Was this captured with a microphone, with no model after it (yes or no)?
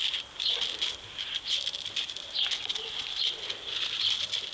yes